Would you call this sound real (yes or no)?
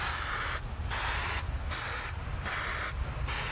yes